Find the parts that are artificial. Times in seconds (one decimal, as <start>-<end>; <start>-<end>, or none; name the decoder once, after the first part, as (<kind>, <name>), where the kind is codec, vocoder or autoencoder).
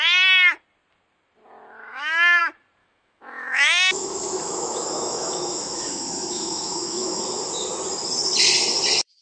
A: 1.9-2.4 (autoencoder, DAC-VAE); 2.8-7.2